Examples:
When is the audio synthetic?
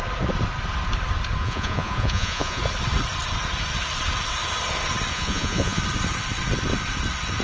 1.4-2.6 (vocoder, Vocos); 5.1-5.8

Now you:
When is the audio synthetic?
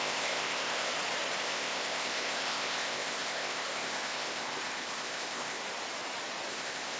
0.0-0.9 (codec, ZipCodec); 1.4-5.6; 6.5-7.0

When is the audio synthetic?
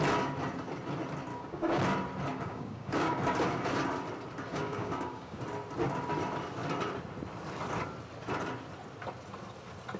1.3-1.8 (codec, DAC); 2.3-3.1; 4.5-5.4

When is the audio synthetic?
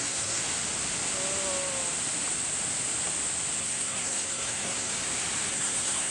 0.0-0.4 (codec, SNAC); 3.6-4.9; 5.5-6.1